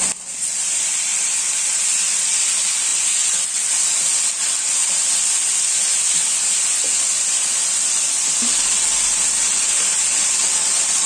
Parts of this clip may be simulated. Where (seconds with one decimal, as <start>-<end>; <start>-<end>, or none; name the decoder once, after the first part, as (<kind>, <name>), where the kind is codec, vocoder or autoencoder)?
none